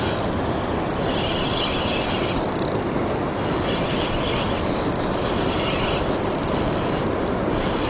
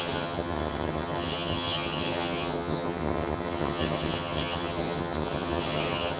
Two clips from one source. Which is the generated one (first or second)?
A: second